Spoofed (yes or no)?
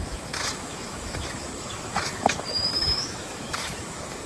yes